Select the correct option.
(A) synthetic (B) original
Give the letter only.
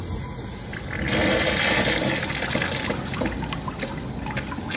B